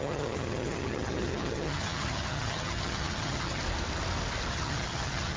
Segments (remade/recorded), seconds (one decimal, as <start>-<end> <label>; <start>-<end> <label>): 0.0-3.6 remade; 3.6-4.5 recorded; 4.5-5.4 remade